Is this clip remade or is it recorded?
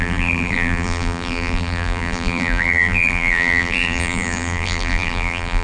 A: remade